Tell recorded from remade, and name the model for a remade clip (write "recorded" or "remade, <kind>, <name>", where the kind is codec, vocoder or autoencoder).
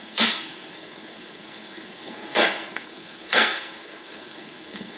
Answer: remade, codec, SNAC